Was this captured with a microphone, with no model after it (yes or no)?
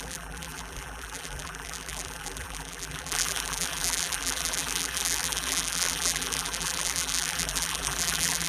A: no